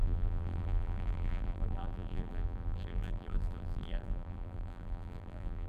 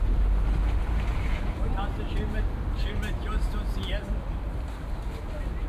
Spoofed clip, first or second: first